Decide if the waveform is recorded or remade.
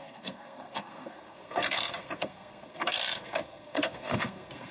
remade